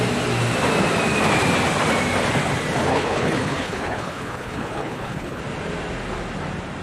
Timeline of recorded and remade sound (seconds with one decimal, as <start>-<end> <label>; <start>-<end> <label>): 0.0-2.9 recorded; 2.9-5.4 remade; 5.4-6.8 recorded